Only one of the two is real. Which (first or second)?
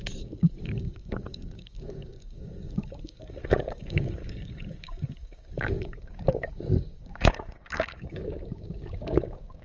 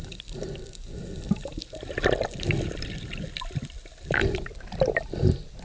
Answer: second